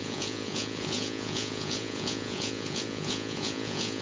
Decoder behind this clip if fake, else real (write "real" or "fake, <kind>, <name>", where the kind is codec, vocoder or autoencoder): fake, vocoder, Vocos